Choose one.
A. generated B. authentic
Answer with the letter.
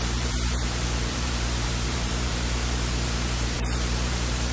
A